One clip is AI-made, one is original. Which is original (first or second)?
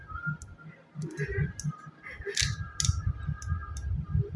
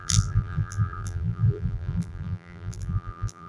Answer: first